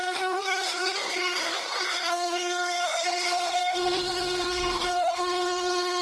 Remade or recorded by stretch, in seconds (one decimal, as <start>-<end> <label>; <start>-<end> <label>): 0.0-6.0 remade